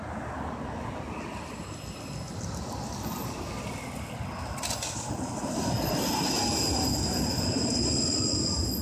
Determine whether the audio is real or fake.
real